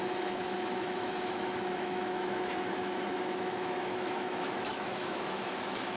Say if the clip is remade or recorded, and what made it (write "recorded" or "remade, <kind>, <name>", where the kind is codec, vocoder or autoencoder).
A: remade, autoencoder, DAC-VAE